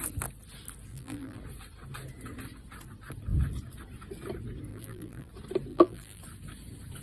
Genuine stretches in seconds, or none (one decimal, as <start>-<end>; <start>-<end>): 0.0-0.9; 1.4-4.7; 5.3-5.7; 6.2-7.0